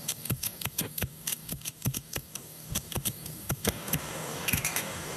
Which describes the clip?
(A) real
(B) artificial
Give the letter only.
B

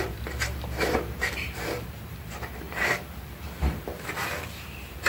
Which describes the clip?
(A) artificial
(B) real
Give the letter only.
A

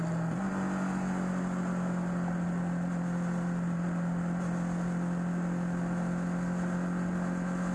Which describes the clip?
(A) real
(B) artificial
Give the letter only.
A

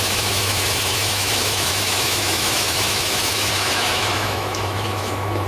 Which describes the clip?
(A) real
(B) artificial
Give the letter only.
B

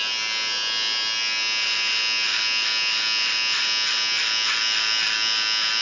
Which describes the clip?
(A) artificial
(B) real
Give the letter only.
B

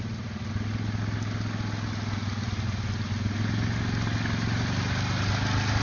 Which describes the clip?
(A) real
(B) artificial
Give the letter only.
A